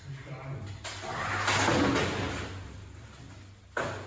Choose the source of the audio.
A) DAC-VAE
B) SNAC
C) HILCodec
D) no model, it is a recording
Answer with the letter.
D